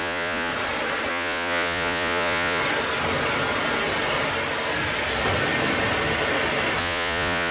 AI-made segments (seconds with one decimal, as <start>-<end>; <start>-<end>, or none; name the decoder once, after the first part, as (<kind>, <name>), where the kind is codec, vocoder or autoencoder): 0.0-0.5 (vocoder, Vocos); 1.1-2.6; 6.8-7.5